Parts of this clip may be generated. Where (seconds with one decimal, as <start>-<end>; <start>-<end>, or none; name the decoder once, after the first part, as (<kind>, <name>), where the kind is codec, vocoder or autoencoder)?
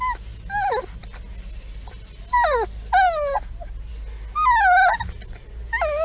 none